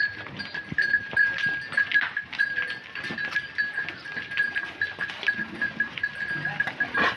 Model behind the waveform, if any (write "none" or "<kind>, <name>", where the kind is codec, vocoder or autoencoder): none